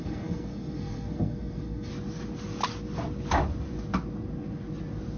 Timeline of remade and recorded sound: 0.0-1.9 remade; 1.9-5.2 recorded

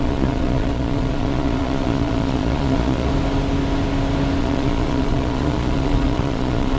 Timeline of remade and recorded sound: 0.0-3.1 remade; 3.1-4.4 recorded; 4.4-6.8 remade

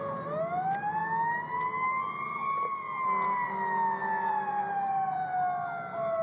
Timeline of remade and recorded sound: 0.0-6.2 recorded

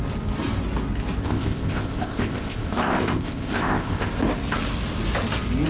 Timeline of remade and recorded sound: 0.0-1.2 recorded; 1.2-4.1 remade; 4.1-5.7 recorded

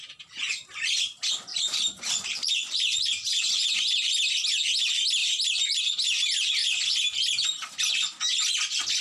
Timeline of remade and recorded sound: 0.0-1.5 recorded; 1.5-3.4 remade; 3.4-5.2 recorded; 5.2-5.8 remade; 5.8-9.0 recorded

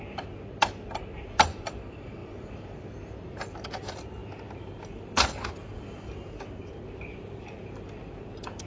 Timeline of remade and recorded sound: 0.0-2.2 recorded; 2.2-3.4 remade; 3.4-8.7 recorded

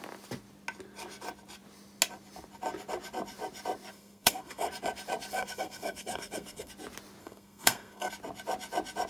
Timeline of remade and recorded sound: 0.0-3.9 recorded; 3.9-4.7 remade; 4.7-5.3 recorded; 5.3-6.7 remade; 6.7-7.2 recorded; 7.2-8.1 remade; 8.1-9.1 recorded